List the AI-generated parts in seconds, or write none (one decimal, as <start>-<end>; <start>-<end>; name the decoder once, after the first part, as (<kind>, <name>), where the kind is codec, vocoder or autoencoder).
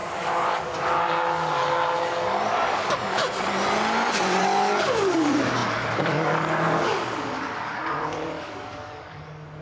0.0-3.2 (codec, DAC); 4.4-9.6